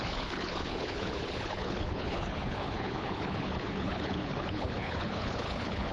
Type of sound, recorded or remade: remade